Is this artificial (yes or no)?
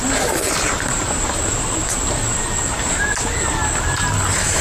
no